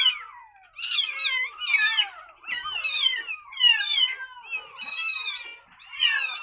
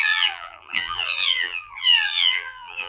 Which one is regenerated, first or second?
second